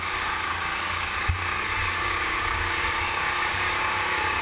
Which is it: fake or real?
fake